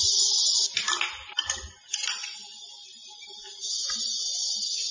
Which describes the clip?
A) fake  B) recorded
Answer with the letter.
B